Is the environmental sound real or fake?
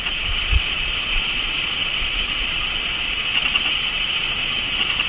fake